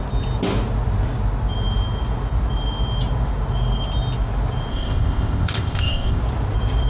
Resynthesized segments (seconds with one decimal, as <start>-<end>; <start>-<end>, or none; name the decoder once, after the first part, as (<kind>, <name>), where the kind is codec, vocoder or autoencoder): 4.7-6.2 (codec, ZipCodec)